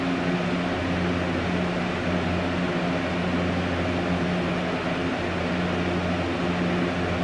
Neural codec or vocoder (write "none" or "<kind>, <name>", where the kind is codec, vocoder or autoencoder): none